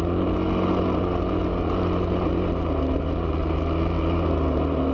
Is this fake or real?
real